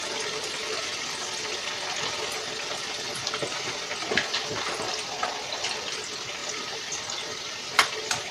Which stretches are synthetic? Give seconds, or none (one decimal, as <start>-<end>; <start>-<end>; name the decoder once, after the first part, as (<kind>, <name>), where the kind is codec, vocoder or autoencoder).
6.4-7.6 (vocoder, BigVGAN v2)